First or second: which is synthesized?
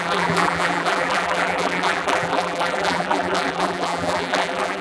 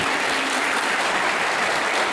first